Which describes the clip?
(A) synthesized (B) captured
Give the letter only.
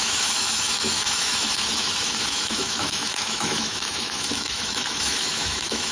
A